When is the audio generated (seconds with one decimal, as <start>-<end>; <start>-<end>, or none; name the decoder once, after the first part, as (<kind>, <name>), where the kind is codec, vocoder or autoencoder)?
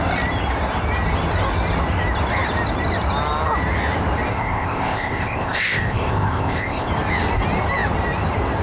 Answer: 4.3-6.9 (codec, ZipCodec)